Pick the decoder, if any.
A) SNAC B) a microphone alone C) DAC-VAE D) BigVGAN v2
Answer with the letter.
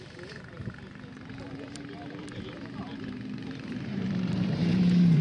D